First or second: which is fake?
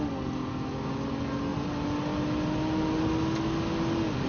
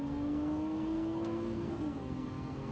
second